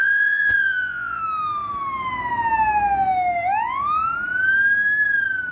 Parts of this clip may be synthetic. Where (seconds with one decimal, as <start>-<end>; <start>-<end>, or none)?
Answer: 0.0-1.2